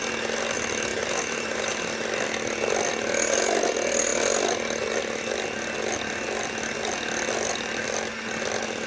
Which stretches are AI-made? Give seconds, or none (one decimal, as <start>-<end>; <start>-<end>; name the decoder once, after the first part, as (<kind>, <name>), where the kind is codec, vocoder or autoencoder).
0.9-1.8 (vocoder, BigVGAN v2)